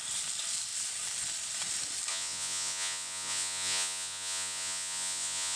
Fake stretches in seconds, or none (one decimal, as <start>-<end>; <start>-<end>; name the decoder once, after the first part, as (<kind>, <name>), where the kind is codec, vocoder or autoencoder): 2.1-5.6 (vocoder, Vocos)